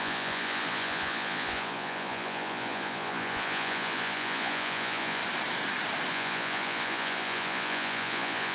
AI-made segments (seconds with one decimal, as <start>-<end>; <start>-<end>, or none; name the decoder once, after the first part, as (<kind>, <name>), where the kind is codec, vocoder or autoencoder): 0.0-5.2 (vocoder, Vocos); 6.1-8.5